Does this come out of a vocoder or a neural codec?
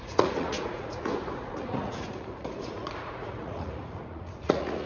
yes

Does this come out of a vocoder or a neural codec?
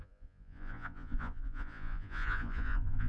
yes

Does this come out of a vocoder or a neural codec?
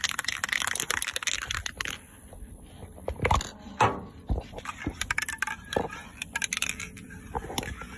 no